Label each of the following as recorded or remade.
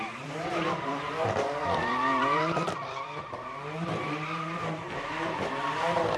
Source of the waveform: remade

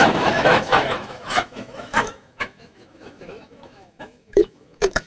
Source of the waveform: remade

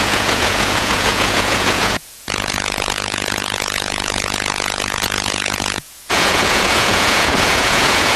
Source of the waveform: remade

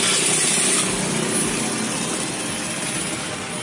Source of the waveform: recorded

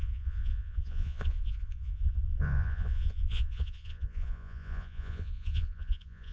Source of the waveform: remade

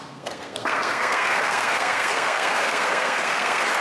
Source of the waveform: remade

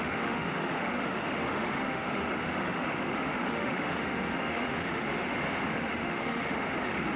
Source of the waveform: remade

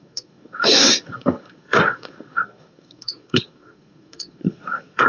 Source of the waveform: remade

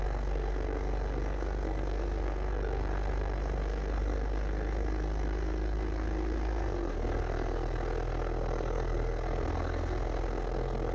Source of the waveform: remade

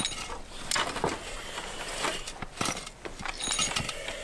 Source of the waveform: recorded